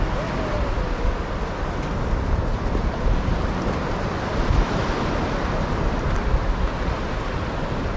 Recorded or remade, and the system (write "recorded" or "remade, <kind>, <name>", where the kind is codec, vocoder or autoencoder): recorded